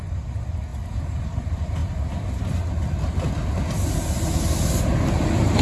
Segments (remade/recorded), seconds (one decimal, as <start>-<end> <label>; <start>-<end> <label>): 0.0-0.7 recorded; 0.7-1.2 remade; 1.2-5.6 recorded